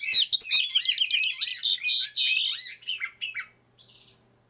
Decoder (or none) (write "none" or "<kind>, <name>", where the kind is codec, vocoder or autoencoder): none